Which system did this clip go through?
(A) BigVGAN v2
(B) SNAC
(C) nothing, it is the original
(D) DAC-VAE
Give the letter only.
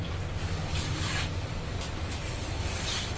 C